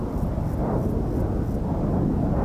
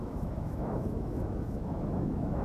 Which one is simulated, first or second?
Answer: second